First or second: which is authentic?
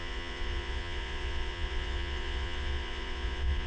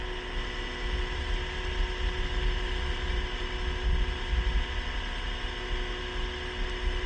second